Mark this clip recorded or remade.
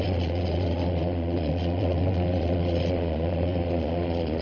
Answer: remade